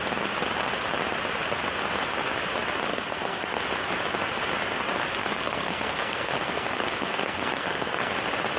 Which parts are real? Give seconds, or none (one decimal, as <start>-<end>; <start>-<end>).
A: 0.0-2.9; 3.6-5.2; 8.1-8.6